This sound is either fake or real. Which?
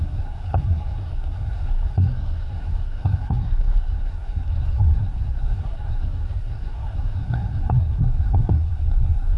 fake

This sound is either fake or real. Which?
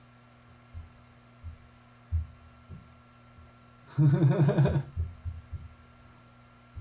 real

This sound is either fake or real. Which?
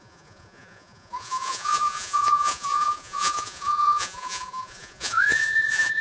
fake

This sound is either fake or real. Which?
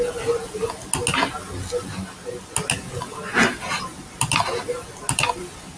real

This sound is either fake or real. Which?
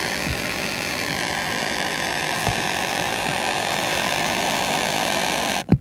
fake